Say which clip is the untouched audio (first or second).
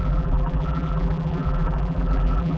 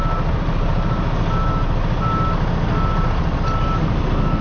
second